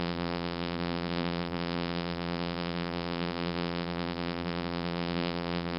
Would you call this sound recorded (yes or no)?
no